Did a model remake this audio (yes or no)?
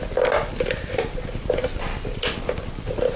no